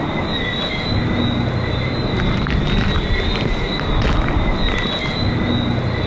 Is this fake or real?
real